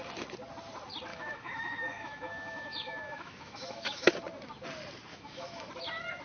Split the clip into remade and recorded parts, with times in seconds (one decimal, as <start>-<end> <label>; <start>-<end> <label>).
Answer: 0.0-1.1 recorded; 1.1-4.1 remade; 4.1-5.1 recorded; 5.1-5.7 remade; 5.7-6.2 recorded